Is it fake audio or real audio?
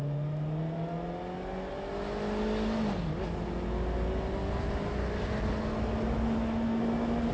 real